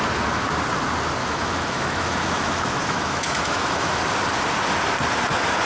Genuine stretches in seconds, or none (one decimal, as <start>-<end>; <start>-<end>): 0.0-1.2; 4.0-5.7